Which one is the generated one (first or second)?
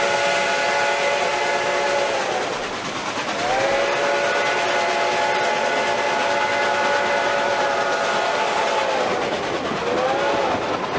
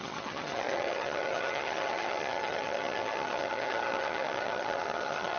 second